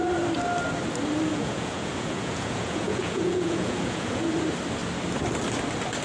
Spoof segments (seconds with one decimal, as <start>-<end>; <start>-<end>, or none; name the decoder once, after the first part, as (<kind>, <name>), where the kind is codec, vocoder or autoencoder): 1.3-4.2 (vocoder, Vocos)